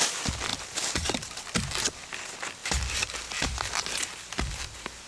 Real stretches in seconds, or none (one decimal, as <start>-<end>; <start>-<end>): 0.0-0.5; 1.4-2.6

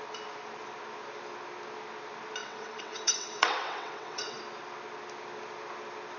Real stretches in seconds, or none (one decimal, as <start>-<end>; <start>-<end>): 0.0-2.4; 4.4-6.2

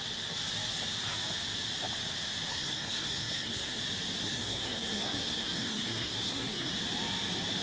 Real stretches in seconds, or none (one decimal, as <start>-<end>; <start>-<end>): 0.0-2.5; 3.8-4.2; 6.7-7.6

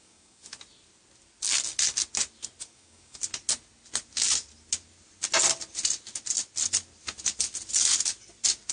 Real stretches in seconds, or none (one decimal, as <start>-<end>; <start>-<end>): 0.5-2.6; 3.2-8.7

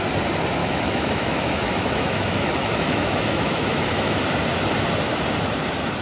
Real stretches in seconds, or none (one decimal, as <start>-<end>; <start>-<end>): 0.0-0.6; 4.2-6.0

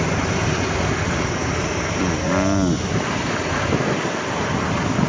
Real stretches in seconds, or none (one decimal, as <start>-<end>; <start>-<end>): 0.0-5.1